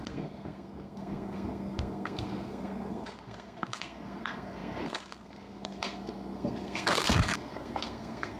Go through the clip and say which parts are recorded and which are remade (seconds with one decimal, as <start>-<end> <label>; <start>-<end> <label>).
0.0-8.4 remade